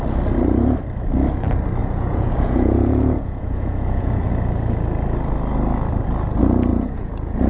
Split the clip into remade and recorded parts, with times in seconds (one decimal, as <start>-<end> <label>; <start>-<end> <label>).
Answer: 0.0-1.8 recorded; 1.8-4.3 remade; 4.3-6.7 recorded; 6.7-7.5 remade